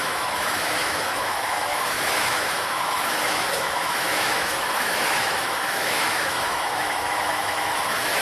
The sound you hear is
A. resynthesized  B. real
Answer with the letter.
A